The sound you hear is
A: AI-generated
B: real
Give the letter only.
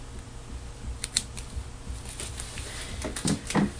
B